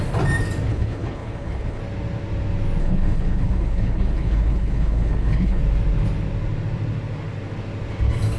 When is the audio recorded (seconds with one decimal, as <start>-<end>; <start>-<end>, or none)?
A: 0.0-0.7; 1.8-2.8; 5.6-8.4

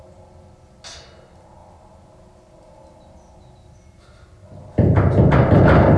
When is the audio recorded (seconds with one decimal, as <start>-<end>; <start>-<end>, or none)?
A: 0.0-6.0

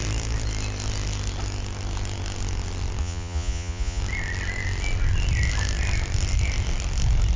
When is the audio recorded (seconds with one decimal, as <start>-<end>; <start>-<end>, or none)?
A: 0.0-3.0; 4.0-7.4

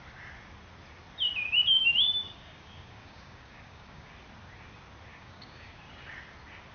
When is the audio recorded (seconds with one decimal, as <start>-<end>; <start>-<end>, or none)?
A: 0.0-1.8; 4.1-5.1; 5.8-6.7